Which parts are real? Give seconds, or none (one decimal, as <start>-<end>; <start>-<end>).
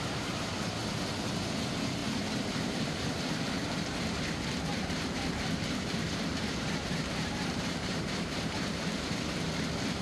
0.0-2.0; 4.2-4.7; 9.5-10.0